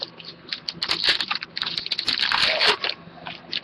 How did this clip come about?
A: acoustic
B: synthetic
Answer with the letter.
A